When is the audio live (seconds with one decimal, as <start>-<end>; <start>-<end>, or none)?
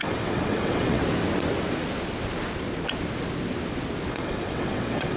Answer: 1.0-4.1